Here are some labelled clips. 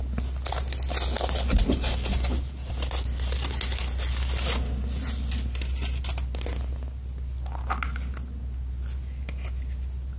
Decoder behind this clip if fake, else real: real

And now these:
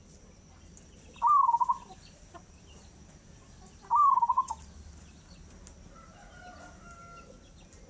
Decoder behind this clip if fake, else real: real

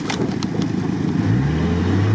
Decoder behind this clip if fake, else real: real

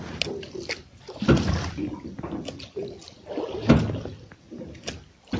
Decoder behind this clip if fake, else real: real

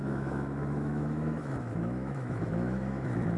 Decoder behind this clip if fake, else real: fake, autoencoder, DAC-VAE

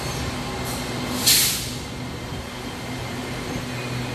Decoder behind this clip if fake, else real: real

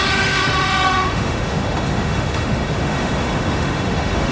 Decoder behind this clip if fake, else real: fake, autoencoder, DAC-VAE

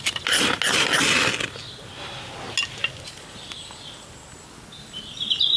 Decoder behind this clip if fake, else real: real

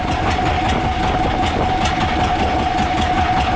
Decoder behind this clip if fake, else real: real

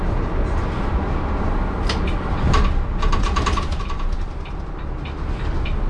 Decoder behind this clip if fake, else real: real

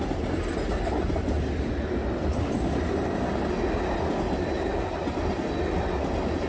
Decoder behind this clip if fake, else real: real